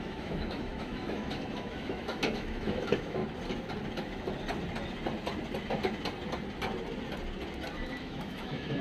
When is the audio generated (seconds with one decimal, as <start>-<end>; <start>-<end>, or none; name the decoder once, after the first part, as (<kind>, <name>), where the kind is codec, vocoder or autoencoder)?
0.0-3.2 (autoencoder, DAC-VAE); 8.0-8.8